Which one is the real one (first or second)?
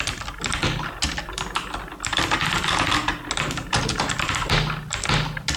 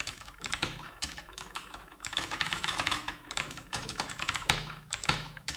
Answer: first